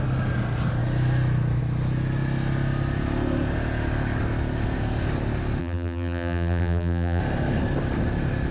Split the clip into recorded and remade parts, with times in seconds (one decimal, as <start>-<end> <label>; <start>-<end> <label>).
0.0-5.6 recorded; 5.6-7.2 remade; 7.2-8.5 recorded